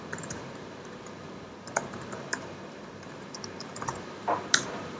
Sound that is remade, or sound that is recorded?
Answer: remade